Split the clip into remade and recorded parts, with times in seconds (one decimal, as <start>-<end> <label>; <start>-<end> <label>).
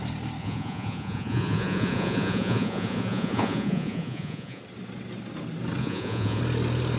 0.0-0.4 recorded; 0.4-4.6 remade; 4.6-5.8 recorded; 5.8-6.4 remade; 6.4-7.0 recorded